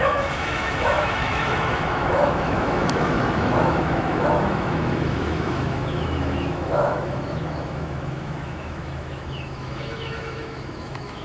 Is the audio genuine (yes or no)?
no